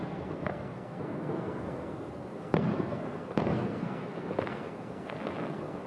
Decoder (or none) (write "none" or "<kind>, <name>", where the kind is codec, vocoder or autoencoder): codec, SNAC